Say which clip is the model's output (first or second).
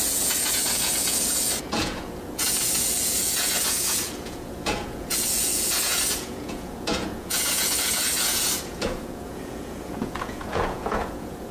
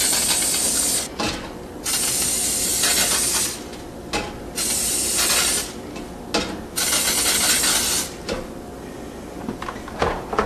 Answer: first